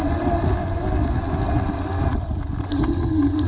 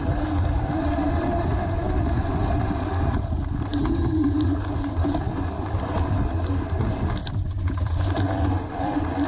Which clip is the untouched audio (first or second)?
first